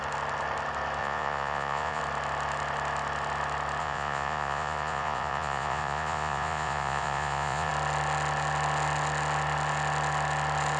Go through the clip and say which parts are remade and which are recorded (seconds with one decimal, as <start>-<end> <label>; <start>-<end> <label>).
0.0-1.0 recorded; 1.0-2.0 remade; 2.0-3.8 recorded; 3.8-7.7 remade; 7.7-10.8 recorded